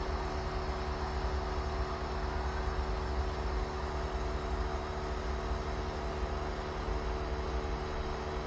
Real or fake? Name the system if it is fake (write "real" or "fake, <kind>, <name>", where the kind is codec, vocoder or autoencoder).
real